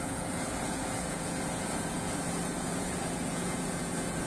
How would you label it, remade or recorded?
remade